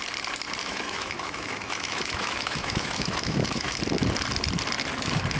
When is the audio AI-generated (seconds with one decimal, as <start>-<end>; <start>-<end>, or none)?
0.6-3.8